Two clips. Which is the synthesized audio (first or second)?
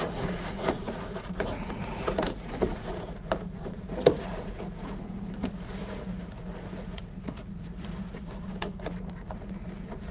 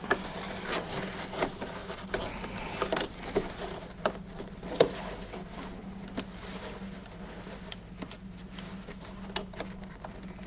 first